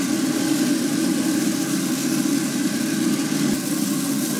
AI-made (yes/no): no